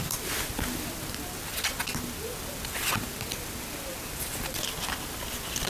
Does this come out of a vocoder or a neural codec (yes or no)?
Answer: no